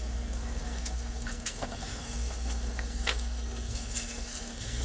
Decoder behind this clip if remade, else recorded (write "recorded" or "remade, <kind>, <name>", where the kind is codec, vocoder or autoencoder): remade, codec, SNAC